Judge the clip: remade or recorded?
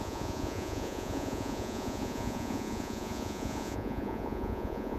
remade